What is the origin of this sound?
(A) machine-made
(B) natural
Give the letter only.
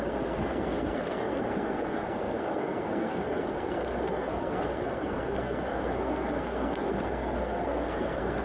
A